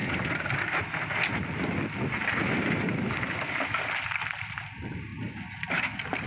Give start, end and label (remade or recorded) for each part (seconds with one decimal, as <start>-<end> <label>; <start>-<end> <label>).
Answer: 0.0-6.3 recorded